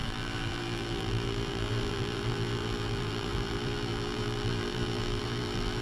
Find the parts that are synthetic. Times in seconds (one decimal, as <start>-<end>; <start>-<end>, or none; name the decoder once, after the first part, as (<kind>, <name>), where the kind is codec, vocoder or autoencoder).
0.0-5.8 (vocoder, BigVGAN v2)